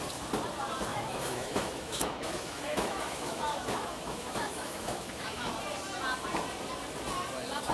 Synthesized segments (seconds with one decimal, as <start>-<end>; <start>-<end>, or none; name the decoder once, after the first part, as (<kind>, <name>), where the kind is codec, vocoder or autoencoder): 0.9-5.5 (autoencoder, DAC-VAE)